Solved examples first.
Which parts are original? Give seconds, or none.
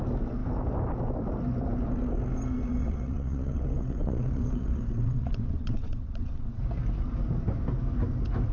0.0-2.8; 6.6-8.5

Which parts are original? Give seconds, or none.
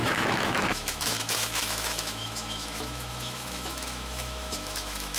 none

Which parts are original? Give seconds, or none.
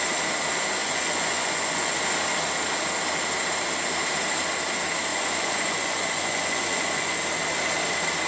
0.0-0.8; 1.9-5.1; 7.2-8.3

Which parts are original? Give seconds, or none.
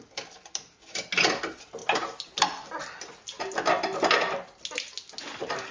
0.0-5.7